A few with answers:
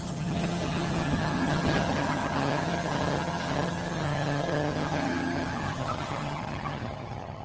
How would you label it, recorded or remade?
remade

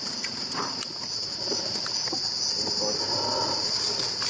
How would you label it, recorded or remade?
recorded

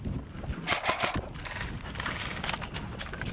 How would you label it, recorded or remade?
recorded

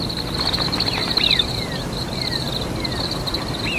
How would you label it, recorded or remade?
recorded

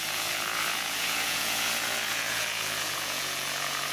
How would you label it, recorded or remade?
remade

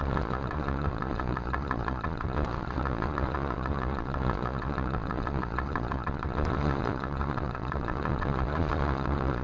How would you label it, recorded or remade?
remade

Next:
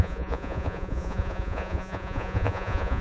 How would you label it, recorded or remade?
remade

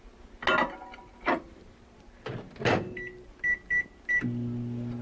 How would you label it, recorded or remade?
recorded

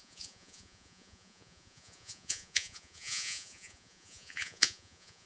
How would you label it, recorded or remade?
remade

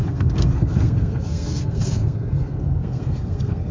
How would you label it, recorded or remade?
remade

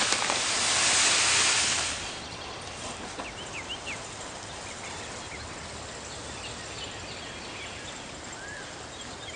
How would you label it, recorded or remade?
recorded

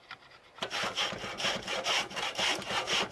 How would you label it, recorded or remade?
remade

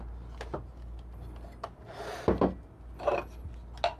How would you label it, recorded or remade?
recorded